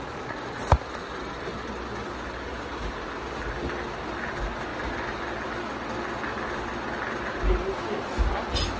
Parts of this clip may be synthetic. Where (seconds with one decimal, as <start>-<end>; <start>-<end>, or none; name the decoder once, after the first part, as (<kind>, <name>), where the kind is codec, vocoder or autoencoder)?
1.0-1.7 (vocoder, BigVGAN v2)